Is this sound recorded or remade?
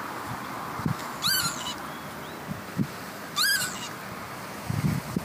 recorded